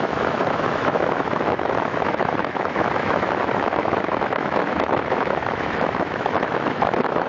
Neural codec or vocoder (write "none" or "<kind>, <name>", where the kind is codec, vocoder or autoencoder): autoencoder, DAC-VAE